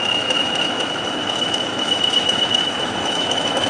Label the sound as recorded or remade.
remade